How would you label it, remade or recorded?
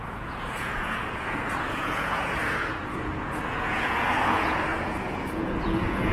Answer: remade